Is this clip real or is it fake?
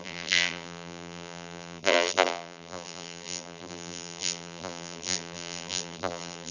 fake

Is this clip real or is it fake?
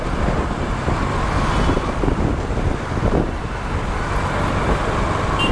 real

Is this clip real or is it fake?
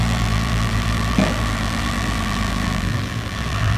fake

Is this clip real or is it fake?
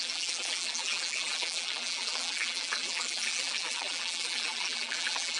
fake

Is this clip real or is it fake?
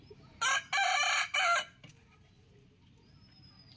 real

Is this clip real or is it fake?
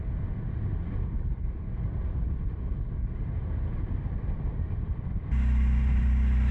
real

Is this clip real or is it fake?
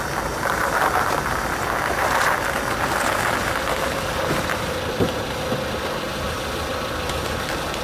real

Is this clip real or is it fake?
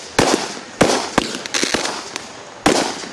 real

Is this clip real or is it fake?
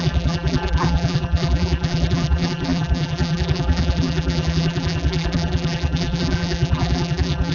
fake